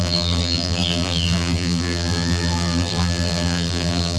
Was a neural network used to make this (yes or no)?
yes